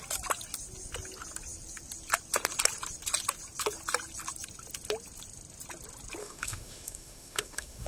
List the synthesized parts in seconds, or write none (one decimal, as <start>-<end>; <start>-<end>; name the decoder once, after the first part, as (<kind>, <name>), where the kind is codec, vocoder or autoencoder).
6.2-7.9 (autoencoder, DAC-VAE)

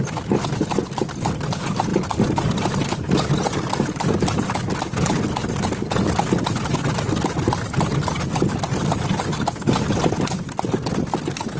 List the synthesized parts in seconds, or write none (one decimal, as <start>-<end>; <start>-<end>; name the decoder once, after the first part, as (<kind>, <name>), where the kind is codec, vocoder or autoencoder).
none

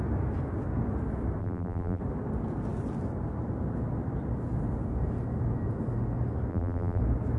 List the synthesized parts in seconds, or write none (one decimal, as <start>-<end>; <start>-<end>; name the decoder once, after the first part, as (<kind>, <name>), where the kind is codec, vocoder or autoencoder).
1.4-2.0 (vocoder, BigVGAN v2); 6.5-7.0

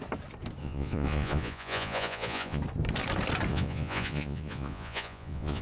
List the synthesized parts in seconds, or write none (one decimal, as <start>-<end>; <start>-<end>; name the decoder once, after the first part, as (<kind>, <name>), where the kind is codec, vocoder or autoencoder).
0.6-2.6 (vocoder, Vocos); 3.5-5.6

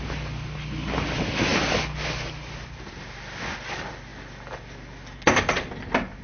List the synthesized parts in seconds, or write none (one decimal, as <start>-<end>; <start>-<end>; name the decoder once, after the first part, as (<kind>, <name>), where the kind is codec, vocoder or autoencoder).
none

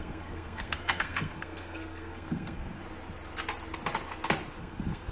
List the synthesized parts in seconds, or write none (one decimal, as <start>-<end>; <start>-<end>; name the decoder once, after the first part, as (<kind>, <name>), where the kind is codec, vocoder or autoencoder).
0.0-2.8 (codec, SNAC); 4.6-5.1

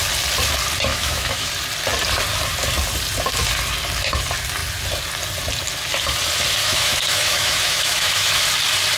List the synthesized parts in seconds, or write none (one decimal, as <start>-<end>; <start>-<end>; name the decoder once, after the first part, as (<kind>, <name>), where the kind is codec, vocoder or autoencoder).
0.9-1.5 (autoencoder, DAC-VAE); 6.6-8.4